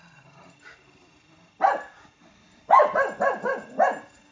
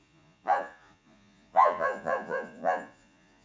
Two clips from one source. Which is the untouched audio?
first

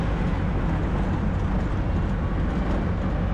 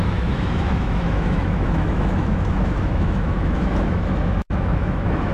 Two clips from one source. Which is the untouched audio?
first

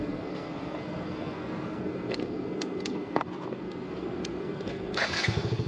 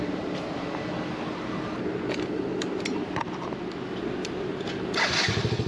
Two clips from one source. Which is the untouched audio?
second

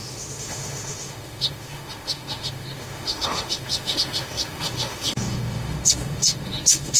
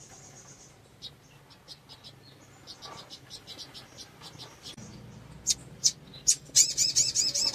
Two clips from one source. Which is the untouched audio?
second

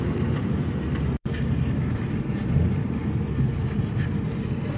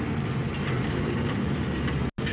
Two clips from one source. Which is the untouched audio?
second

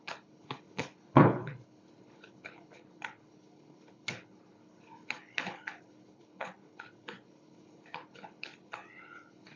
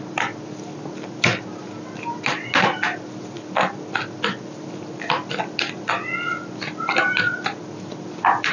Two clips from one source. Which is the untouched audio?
second